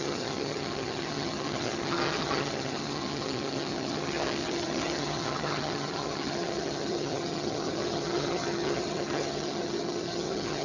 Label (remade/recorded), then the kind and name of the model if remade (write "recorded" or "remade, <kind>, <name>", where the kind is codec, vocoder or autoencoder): remade, vocoder, HiFi-GAN